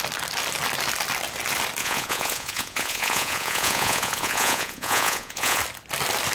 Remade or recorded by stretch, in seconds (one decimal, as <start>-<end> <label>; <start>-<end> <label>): 0.0-1.8 recorded; 1.8-5.6 remade; 5.6-6.3 recorded